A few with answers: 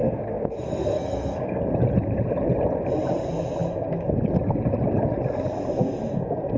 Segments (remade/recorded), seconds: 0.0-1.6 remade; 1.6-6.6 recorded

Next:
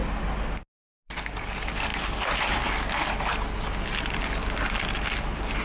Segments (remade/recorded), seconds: 0.0-5.6 recorded

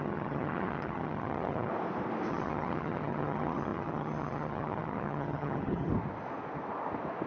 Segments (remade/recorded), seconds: 0.0-1.7 remade; 1.7-2.3 recorded; 2.3-5.9 remade; 5.9-7.3 recorded

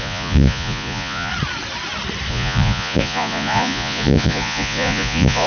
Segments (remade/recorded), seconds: 0.0-1.3 remade; 1.3-2.3 recorded; 2.3-5.5 remade

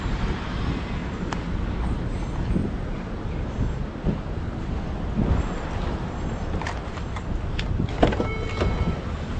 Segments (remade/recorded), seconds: 0.0-1.0 recorded; 1.0-4.0 remade; 4.0-4.5 recorded; 4.5-8.0 remade; 8.0-9.4 recorded

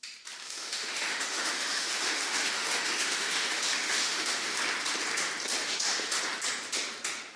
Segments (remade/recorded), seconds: 0.0-0.4 recorded; 0.4-4.6 remade; 4.6-5.6 recorded; 5.6-6.2 remade; 6.2-7.4 recorded